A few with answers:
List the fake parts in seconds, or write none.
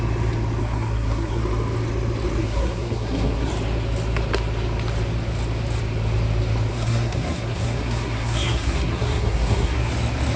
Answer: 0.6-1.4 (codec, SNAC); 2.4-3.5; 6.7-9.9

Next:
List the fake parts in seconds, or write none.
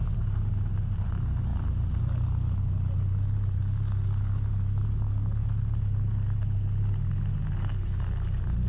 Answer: none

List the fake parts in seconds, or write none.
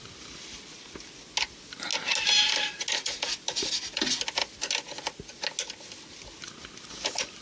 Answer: none